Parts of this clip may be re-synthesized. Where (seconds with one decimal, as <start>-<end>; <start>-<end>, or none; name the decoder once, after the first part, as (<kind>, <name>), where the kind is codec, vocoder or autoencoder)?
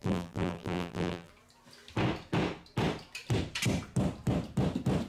0.0-1.3 (vocoder, BigVGAN v2)